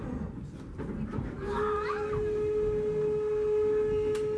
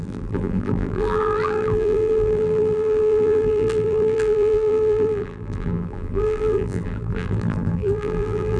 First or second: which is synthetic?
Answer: second